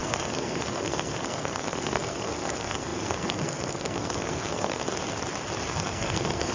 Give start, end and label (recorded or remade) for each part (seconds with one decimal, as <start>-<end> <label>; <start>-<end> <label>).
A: 0.0-4.8 remade; 4.8-5.7 recorded; 5.7-6.5 remade